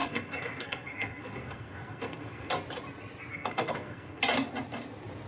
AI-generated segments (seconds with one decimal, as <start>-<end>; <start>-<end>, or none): 0.0-2.5; 3.3-4.2